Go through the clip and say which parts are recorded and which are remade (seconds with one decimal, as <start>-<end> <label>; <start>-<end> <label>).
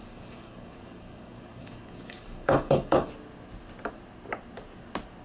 0.0-3.1 remade; 3.1-5.2 recorded